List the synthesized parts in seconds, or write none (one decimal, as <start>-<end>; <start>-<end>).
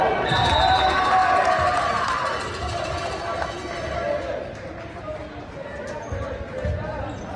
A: none